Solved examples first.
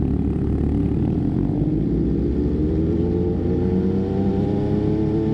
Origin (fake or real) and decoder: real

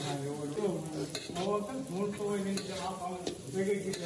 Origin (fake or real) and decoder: real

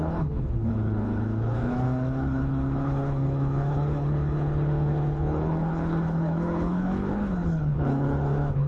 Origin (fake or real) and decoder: fake, codec, HILCodec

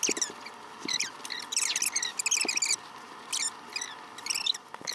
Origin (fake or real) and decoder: real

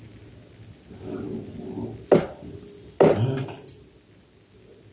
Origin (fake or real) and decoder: real